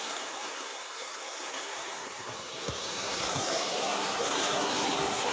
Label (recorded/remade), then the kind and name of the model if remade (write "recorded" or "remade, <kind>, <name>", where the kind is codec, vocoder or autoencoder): remade, codec, SNAC